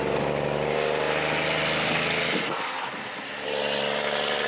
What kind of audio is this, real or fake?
real